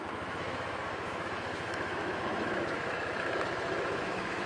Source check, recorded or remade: remade